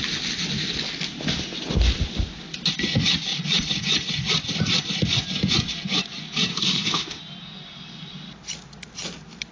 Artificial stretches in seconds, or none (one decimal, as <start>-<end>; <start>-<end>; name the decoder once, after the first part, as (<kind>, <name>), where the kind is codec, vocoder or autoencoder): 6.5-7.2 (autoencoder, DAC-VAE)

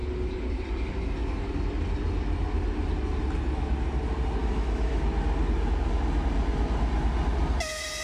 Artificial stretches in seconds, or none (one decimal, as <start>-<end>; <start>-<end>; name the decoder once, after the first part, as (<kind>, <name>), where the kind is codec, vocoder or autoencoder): 4.4-5.0 (autoencoder, DAC-VAE)

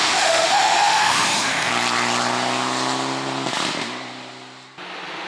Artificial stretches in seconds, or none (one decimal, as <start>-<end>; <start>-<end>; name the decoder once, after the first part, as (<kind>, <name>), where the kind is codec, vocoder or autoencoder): 0.0-1.7 (autoencoder, DAC-VAE)